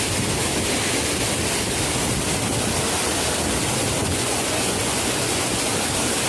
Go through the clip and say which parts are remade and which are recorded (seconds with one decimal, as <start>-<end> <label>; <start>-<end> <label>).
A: 0.0-4.0 recorded; 4.0-5.7 remade; 5.7-6.3 recorded

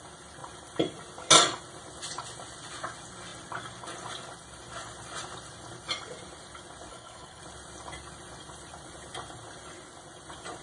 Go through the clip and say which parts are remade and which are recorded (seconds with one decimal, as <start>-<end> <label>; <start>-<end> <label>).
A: 0.0-6.9 recorded; 6.9-7.4 remade; 7.4-10.6 recorded

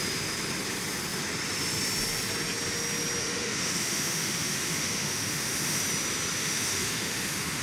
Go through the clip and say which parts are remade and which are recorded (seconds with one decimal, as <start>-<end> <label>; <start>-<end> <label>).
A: 0.0-3.2 recorded; 3.2-5.8 remade; 5.8-6.4 recorded; 6.4-7.6 remade